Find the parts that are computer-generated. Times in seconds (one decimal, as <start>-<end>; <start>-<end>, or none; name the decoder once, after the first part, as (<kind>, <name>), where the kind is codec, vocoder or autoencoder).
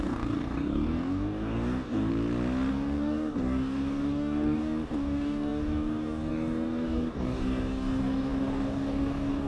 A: 0.0-2.1 (codec, DAC); 2.7-9.5